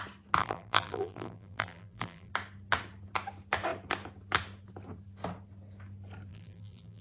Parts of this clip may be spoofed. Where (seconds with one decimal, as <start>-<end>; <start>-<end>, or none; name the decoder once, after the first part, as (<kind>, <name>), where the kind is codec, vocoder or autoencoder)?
0.4-2.3 (vocoder, BigVGAN v2); 6.3-7.0